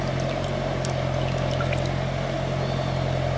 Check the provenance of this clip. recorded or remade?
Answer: recorded